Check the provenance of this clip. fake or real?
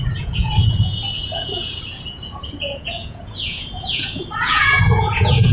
fake